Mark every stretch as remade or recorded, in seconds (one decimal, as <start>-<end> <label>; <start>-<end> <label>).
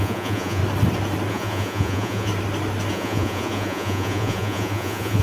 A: 0.0-0.6 remade; 0.6-1.3 recorded; 1.3-2.3 remade; 2.3-2.9 recorded; 2.9-5.2 remade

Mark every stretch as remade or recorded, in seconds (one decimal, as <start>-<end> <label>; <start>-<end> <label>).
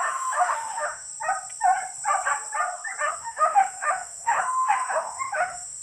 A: 0.0-1.1 remade; 1.1-3.1 recorded; 3.1-5.8 remade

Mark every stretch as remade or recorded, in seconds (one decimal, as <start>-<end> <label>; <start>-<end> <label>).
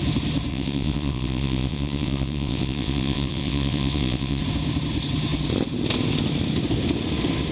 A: 0.0-0.5 recorded; 0.5-4.4 remade; 4.4-7.5 recorded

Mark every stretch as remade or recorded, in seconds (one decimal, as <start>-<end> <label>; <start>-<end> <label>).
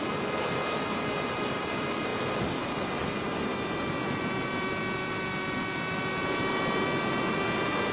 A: 0.0-2.1 remade; 2.1-2.7 recorded; 2.7-7.9 remade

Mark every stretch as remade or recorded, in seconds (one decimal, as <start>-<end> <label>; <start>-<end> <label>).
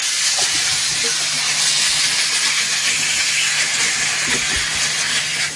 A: 0.0-5.6 recorded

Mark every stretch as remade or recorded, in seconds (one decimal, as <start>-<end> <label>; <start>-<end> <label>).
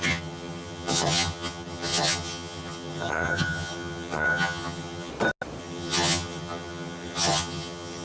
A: 0.0-5.1 remade; 5.1-5.6 recorded; 5.6-8.0 remade